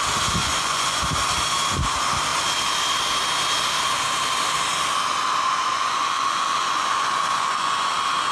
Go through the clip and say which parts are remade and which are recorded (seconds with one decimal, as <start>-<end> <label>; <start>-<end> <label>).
0.0-0.4 recorded; 0.4-1.0 remade; 1.0-5.5 recorded; 5.5-7.9 remade; 7.9-8.3 recorded